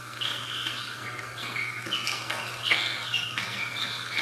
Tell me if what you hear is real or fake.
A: fake